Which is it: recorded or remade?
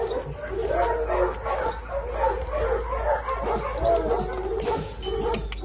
recorded